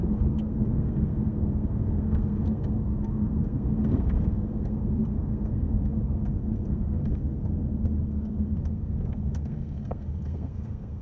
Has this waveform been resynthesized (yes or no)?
yes